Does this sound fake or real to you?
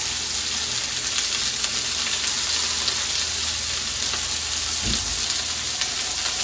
real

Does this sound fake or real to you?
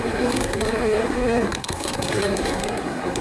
fake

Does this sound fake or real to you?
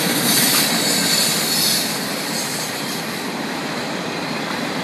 fake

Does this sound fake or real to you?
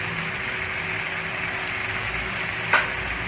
real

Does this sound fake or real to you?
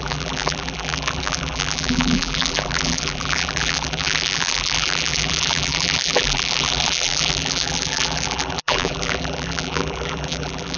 fake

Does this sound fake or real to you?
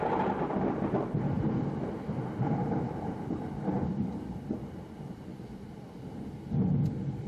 real